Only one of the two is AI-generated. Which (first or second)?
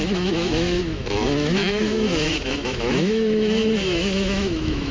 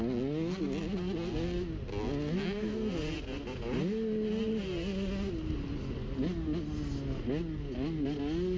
first